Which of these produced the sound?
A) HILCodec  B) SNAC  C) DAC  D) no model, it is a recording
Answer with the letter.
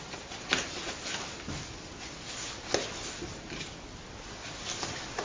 D